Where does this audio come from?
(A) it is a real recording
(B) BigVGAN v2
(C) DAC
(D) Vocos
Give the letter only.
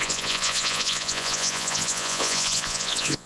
D